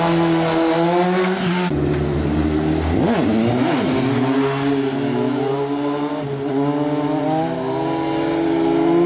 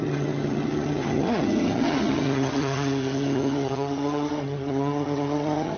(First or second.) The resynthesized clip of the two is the second